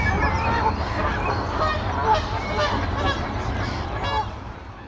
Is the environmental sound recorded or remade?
recorded